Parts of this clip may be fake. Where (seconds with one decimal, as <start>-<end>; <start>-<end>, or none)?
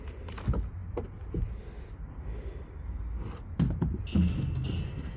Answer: none